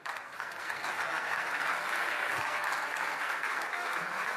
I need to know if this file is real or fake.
fake